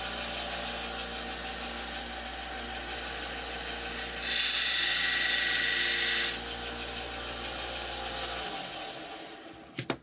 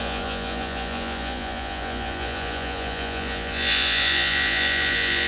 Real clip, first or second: first